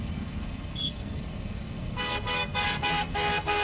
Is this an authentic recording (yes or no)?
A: no